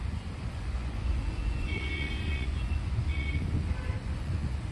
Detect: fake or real fake